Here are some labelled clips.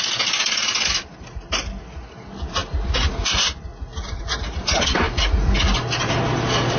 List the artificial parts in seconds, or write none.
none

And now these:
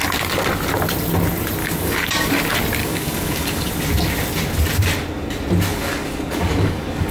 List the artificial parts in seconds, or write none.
1.6-2.4 (codec, DAC); 2.8-3.7; 5.7-7.1

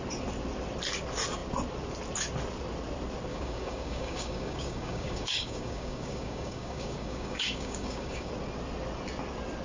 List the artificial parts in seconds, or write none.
3.3-8.3 (codec, DAC)

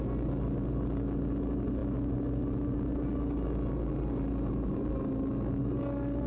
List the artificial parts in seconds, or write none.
none

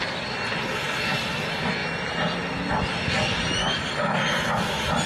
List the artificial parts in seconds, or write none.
3.6-4.2 (codec, DAC)

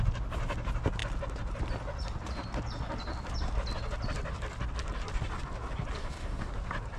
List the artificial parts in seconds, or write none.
6.0-6.5 (codec, DAC)

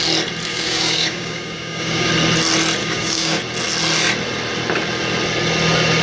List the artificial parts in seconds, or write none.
0.5-2.1 (codec, DAC); 2.8-3.4